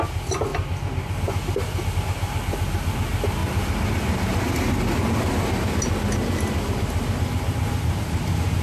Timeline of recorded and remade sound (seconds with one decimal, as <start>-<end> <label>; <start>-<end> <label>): 0.0-8.6 recorded